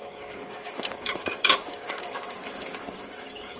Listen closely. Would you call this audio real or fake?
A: fake